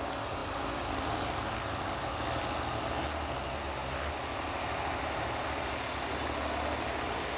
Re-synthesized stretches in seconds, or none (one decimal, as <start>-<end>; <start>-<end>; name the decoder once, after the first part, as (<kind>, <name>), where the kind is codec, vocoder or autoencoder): none